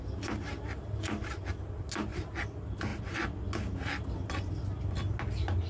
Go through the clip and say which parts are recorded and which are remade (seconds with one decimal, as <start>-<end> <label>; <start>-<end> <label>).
0.0-5.7 recorded